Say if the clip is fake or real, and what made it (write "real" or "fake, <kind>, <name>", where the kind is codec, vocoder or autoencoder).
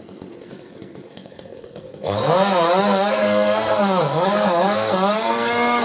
fake, codec, SNAC